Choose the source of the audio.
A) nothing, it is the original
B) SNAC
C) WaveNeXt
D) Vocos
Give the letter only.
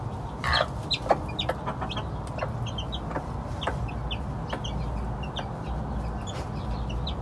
A